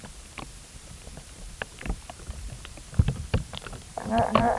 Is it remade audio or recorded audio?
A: remade